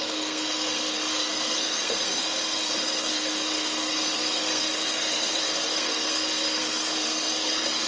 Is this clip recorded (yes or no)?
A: no